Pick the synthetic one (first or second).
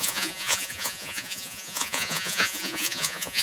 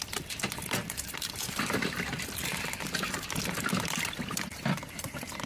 first